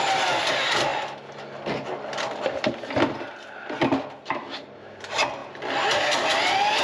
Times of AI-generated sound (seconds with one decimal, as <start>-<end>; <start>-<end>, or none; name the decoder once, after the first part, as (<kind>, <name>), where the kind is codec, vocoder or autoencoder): 0.0-0.9 (vocoder, BigVGAN v2); 5.0-5.4